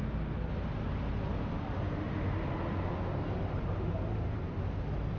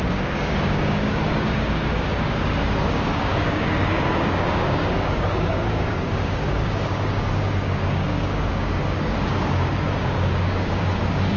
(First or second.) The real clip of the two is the first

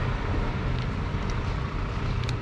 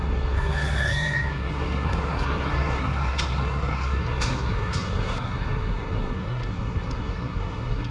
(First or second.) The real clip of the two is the first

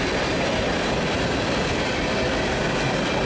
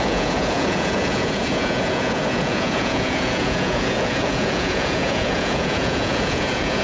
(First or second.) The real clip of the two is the first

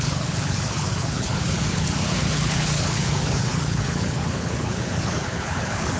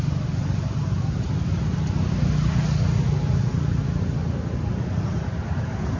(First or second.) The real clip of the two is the second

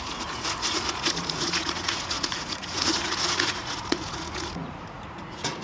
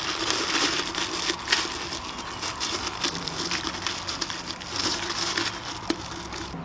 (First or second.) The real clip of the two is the second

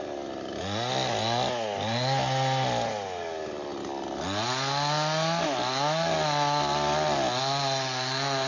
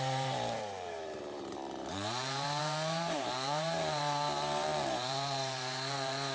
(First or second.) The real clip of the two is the first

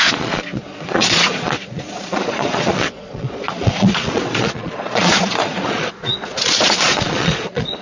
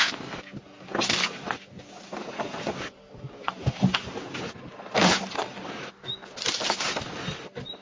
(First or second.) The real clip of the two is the second